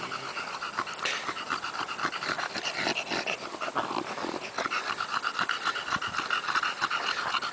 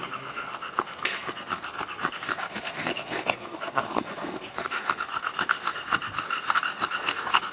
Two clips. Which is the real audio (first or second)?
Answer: first